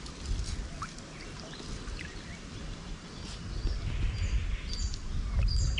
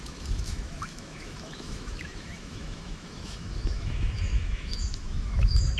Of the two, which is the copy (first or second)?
second